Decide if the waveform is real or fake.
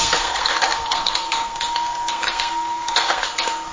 fake